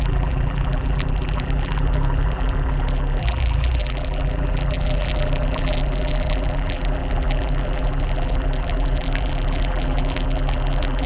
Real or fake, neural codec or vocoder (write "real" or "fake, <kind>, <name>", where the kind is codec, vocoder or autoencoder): fake, vocoder, BigVGAN v2